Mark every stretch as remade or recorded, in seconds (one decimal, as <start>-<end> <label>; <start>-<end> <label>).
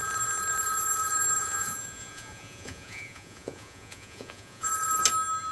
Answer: 0.0-1.4 recorded; 1.4-4.7 remade; 4.7-5.5 recorded